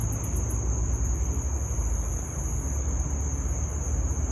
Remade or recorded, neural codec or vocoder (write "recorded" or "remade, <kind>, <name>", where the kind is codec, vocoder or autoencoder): recorded